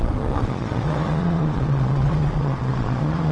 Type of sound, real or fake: fake